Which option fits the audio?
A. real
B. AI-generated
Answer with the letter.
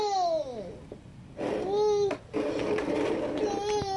A